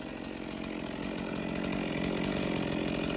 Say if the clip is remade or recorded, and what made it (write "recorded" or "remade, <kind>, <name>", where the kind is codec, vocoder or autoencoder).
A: recorded